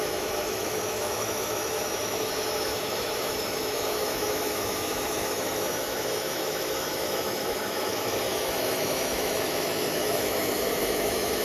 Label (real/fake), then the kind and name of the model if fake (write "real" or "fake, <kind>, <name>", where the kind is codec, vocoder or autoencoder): fake, autoencoder, DAC-VAE